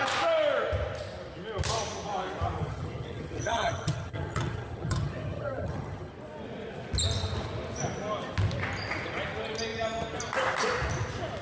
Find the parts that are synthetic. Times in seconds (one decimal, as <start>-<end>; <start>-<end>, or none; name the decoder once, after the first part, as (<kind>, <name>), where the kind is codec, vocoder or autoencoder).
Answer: 2.6-6.1 (vocoder, HiFi-GAN)

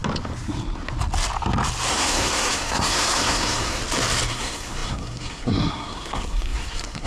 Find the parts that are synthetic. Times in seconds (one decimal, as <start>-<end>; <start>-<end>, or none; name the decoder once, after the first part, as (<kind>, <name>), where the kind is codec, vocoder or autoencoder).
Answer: 1.9-3.8 (codec, SNAC); 4.3-7.1

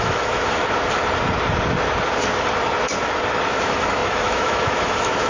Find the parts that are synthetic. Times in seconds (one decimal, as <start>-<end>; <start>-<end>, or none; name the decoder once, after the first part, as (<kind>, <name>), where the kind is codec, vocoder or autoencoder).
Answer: 0.0-0.6 (autoencoder, DAC-VAE); 3.5-5.3

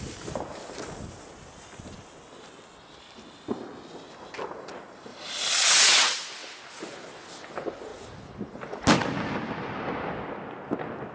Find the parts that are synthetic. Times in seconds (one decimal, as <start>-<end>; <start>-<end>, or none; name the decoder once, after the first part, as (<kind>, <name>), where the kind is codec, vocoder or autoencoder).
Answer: 5.1-5.8 (vocoder, BigVGAN v2)

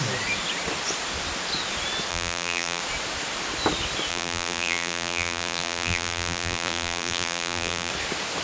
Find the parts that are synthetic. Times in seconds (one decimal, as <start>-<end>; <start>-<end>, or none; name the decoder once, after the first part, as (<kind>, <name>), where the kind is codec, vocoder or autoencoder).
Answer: 2.1-2.8 (vocoder, BigVGAN v2); 4.1-7.9